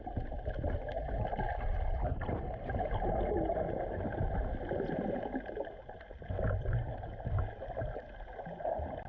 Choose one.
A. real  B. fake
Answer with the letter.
A